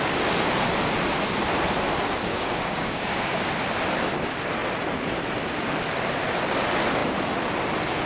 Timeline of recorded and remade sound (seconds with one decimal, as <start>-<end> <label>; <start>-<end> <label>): 0.0-2.3 recorded; 2.3-3.5 remade; 3.5-8.1 recorded